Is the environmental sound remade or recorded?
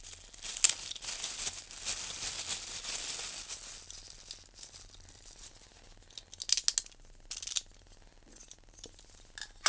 recorded